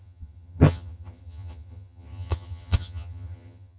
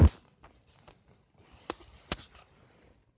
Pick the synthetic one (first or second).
first